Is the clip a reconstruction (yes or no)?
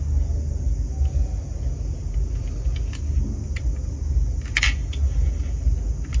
no